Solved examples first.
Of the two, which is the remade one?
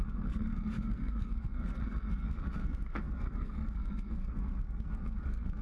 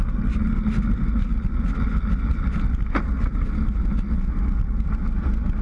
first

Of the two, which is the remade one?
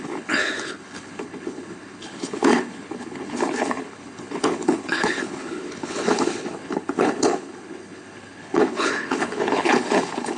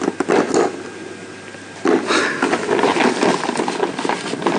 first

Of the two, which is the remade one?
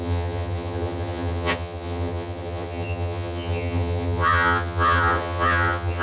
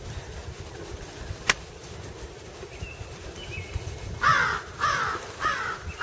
first